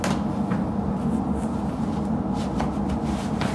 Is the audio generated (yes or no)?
no